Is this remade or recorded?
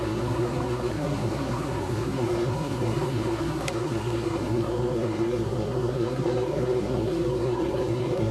remade